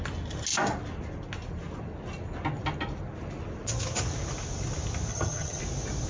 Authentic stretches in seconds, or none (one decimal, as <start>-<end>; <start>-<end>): 0.0-5.1; 5.6-6.1